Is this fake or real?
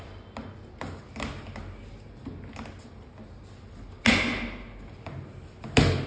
real